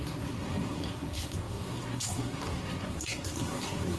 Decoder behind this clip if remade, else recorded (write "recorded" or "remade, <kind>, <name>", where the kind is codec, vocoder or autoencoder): remade, codec, SNAC